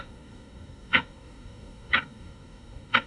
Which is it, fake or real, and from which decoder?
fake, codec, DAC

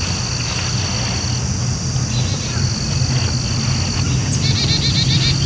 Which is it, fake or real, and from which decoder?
real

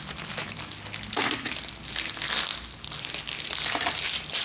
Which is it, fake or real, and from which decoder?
real